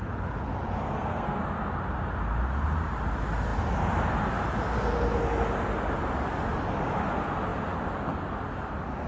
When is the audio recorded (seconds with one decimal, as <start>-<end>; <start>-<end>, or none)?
0.0-0.8; 1.4-9.1